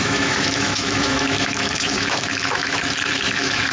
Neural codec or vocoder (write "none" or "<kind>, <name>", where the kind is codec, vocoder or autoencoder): autoencoder, DAC-VAE